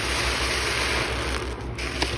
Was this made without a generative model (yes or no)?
yes